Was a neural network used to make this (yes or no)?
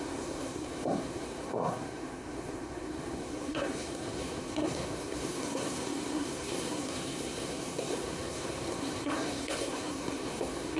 yes